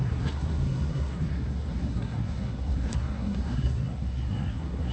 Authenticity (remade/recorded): remade